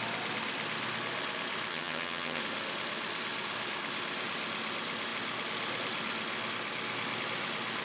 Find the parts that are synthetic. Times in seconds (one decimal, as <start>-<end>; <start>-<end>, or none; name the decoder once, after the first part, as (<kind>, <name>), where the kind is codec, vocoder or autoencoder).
1.7-2.4 (vocoder, HiFi-GAN)